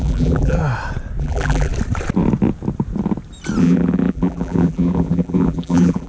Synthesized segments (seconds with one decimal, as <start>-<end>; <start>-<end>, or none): 0.0-0.6; 1.2-1.7; 3.6-6.1